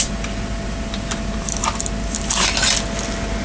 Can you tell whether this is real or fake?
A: real